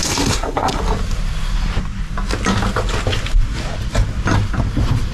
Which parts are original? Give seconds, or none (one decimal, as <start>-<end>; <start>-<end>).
0.8-5.1